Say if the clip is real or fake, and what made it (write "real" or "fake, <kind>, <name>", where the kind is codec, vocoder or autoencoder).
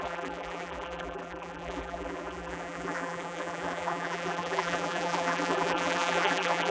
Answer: fake, vocoder, BigVGAN v2